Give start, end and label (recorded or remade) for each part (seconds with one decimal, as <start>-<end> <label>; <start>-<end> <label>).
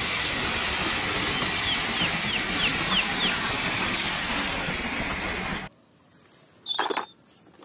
0.0-7.6 recorded